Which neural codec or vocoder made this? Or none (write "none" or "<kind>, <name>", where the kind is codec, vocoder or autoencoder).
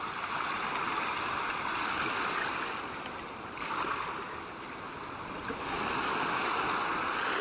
none